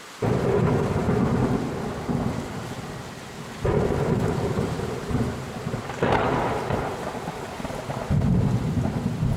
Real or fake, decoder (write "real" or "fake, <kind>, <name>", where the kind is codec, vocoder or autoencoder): real